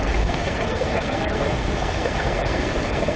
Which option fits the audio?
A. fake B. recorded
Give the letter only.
A